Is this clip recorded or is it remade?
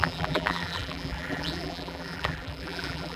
remade